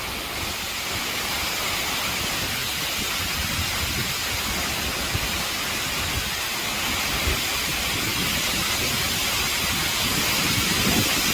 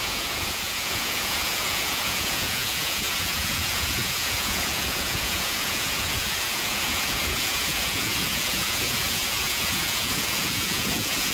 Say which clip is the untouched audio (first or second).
first